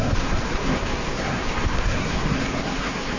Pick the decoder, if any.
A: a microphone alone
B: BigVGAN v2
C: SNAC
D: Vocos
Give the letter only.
C